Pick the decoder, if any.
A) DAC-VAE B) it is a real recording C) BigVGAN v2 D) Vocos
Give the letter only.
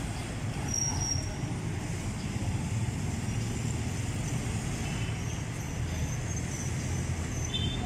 B